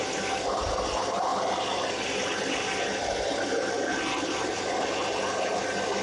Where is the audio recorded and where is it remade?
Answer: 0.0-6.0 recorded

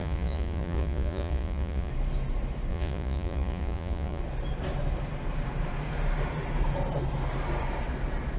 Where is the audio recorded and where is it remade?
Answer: 0.0-1.9 remade; 1.9-2.7 recorded; 2.7-4.2 remade; 4.2-8.4 recorded

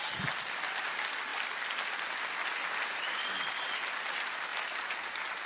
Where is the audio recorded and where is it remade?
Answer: 0.0-5.5 recorded

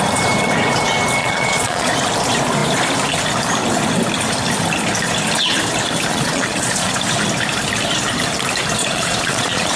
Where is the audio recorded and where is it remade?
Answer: 0.0-1.2 recorded; 1.2-1.9 remade; 1.9-6.1 recorded; 6.1-7.0 remade; 7.0-8.8 recorded; 8.8-9.8 remade

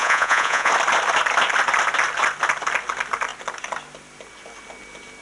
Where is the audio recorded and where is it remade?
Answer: 0.0-0.7 remade; 0.7-5.2 recorded

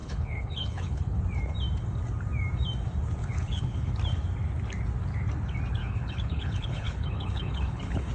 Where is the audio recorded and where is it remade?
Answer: 0.0-1.2 remade; 1.2-3.2 recorded; 3.2-3.9 remade; 3.9-5.8 recorded; 5.8-8.1 remade

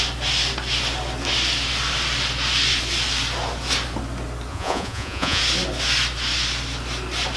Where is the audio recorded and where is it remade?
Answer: 0.0-4.5 recorded; 4.5-5.4 remade; 5.4-7.4 recorded